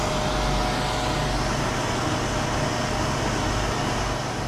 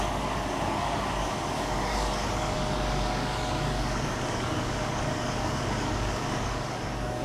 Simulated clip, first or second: second